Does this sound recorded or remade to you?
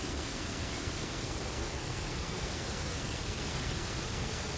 remade